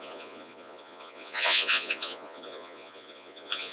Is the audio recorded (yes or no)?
no